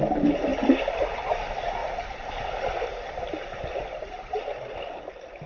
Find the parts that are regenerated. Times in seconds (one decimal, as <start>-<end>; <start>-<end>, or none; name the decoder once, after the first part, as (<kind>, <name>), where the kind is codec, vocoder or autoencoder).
none